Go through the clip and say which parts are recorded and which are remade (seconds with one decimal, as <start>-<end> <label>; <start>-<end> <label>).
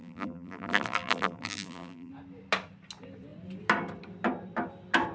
0.0-2.1 remade; 2.1-5.1 recorded